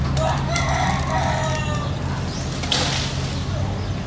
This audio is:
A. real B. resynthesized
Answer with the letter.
A